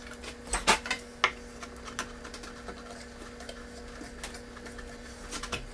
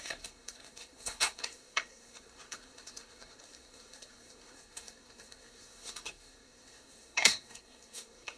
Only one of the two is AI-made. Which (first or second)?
second